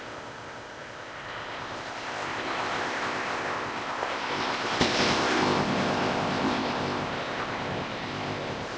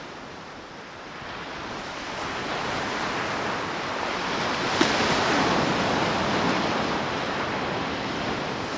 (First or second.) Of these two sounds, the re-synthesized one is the first